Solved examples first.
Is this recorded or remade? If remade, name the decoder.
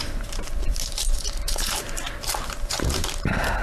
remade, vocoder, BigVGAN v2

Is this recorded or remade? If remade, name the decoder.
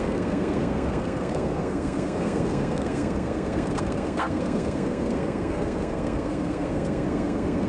remade, codec, SNAC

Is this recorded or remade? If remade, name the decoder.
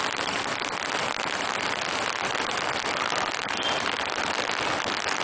recorded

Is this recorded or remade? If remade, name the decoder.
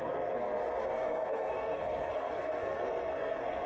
remade, codec, SNAC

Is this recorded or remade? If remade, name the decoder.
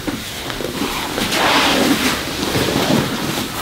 recorded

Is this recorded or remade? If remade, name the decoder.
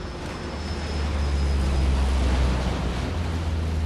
recorded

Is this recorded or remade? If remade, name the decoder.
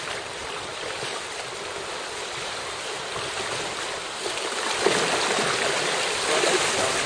recorded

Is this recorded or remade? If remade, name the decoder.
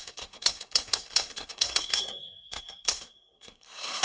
remade, codec, SNAC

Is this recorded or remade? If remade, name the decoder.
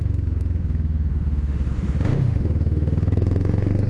remade, autoencoder, DAC-VAE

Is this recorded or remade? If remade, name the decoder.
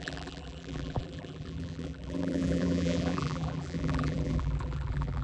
remade, vocoder, BigVGAN v2